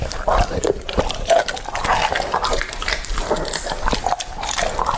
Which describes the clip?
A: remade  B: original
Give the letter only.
B